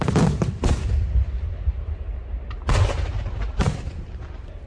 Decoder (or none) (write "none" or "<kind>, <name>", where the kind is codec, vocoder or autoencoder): none